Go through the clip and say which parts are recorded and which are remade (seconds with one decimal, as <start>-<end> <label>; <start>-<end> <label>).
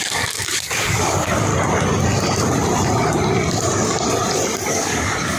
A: 0.0-1.5 remade; 1.5-4.7 recorded; 4.7-5.4 remade